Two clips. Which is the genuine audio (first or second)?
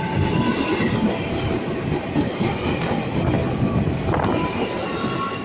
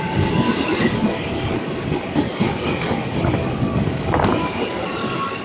first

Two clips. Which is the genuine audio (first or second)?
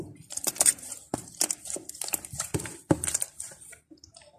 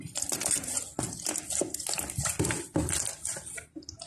second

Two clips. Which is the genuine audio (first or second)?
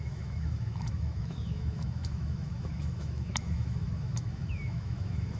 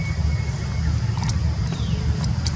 second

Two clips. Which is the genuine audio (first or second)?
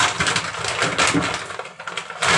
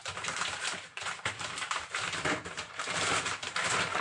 first